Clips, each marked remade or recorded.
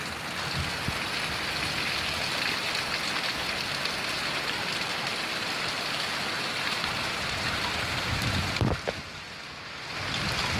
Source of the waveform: recorded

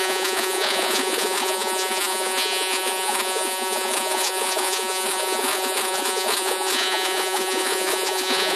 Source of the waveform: remade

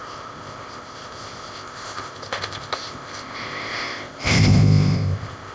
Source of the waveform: remade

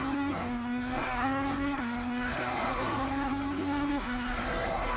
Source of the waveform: remade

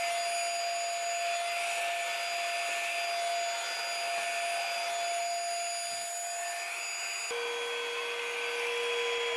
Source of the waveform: recorded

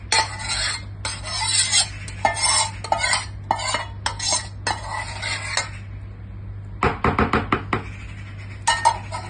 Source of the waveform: recorded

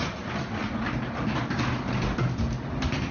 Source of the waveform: recorded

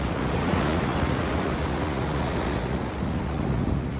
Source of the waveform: remade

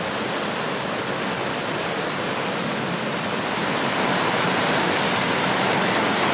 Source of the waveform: recorded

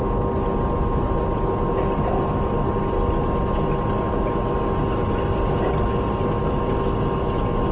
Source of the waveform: recorded